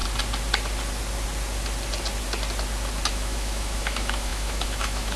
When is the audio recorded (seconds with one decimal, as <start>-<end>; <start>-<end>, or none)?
0.0-3.1